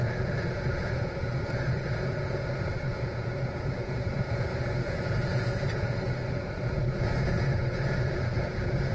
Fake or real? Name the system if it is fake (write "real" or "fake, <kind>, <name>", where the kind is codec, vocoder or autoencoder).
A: fake, vocoder, Vocos